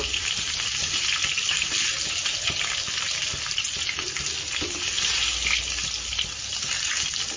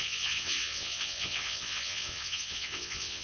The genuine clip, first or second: first